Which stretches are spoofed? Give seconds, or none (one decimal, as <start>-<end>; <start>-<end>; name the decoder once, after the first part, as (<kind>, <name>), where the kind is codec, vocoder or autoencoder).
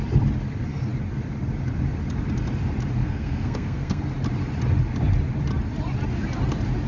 3.0-4.0 (codec, SNAC)